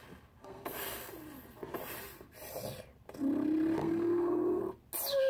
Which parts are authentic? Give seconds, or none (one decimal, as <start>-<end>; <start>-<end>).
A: 0.0-0.4; 1.1-3.8; 4.6-5.3